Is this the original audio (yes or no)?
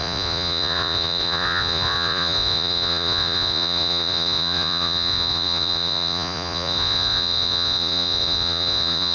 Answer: no